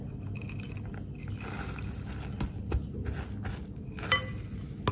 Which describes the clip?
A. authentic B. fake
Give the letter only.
A